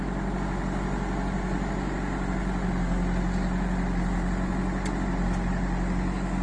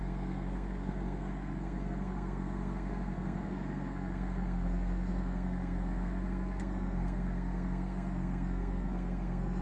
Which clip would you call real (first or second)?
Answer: first